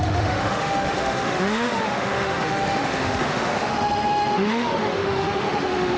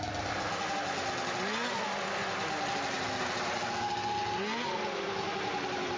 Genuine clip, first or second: second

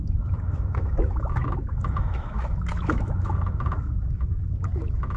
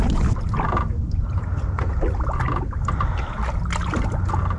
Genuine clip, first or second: second